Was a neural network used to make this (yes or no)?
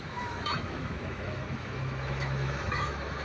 yes